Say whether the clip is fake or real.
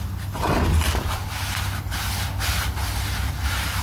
real